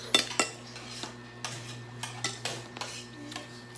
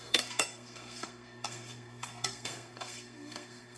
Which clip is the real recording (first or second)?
first